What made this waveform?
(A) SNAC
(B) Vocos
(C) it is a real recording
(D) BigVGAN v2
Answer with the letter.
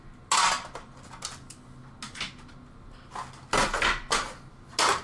C